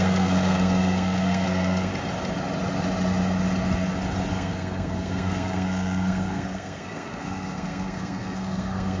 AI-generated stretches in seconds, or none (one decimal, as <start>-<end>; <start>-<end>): 0.0-1.9; 4.3-9.0

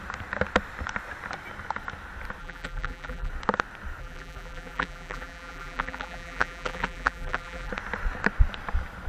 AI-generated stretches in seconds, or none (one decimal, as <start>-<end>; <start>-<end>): 2.4-3.3; 4.0-7.7

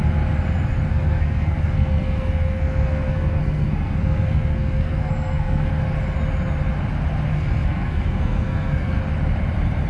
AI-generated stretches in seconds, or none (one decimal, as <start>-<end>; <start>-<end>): 0.9-5.7; 7.3-9.0

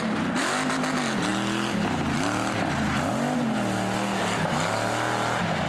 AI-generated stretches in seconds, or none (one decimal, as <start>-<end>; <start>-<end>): none

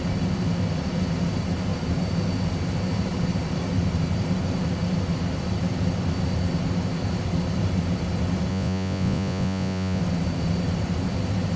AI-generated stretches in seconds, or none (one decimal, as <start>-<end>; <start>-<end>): 8.5-10.0

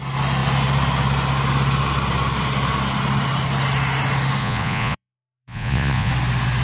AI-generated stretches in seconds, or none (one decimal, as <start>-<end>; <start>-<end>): 4.4-6.1